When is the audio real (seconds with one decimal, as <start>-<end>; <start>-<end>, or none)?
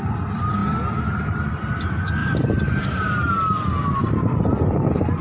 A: 0.0-2.2; 3.3-4.0